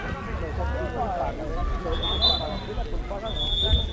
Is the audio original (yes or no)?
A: yes